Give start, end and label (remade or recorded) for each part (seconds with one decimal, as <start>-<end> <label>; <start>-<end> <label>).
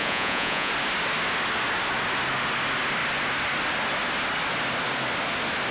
0.0-0.7 remade; 0.7-5.7 recorded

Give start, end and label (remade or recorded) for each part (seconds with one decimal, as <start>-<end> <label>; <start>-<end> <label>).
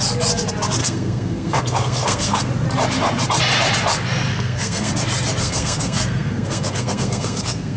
0.0-0.8 recorded; 0.8-2.5 remade; 2.5-4.3 recorded; 4.3-4.9 remade; 4.9-5.4 recorded; 5.4-7.8 remade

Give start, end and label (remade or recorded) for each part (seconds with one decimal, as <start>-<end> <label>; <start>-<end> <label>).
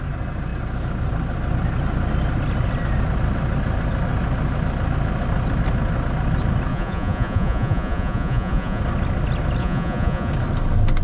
0.0-6.7 recorded; 6.7-8.8 remade; 8.8-9.6 recorded; 9.6-10.3 remade; 10.3-11.0 recorded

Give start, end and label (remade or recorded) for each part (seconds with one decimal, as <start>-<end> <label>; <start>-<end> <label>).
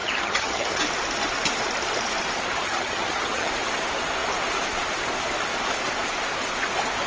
0.0-0.8 remade; 0.8-2.6 recorded; 2.6-3.5 remade; 3.5-7.1 recorded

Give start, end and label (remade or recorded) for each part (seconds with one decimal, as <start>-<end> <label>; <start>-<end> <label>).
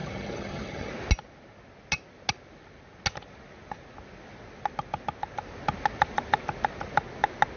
0.0-0.9 remade; 0.9-7.6 recorded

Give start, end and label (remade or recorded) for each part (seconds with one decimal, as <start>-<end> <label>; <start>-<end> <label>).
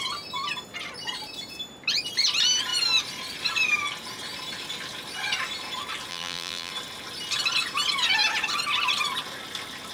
0.0-6.1 recorded; 6.1-6.7 remade; 6.7-9.9 recorded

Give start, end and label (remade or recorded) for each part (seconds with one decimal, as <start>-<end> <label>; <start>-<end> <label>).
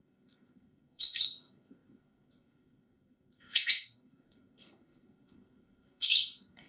0.0-6.7 remade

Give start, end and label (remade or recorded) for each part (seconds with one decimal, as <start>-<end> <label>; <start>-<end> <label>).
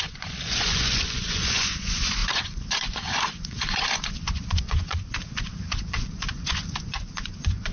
0.0-7.7 remade